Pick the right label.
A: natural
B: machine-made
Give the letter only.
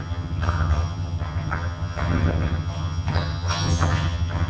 B